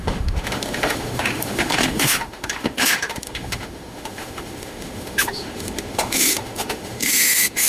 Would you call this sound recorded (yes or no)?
no